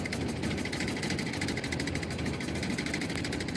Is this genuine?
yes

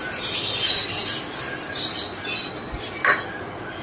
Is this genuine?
yes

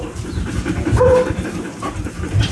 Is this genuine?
no